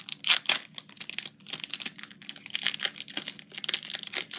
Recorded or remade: recorded